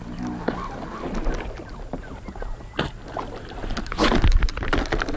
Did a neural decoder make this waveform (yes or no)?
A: no